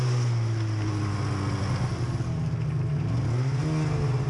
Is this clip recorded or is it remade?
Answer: recorded